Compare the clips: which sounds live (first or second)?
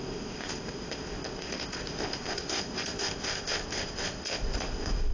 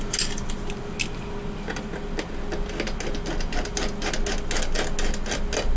second